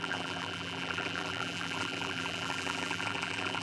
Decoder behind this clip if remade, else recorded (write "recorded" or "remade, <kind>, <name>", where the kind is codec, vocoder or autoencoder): remade, vocoder, BigVGAN v2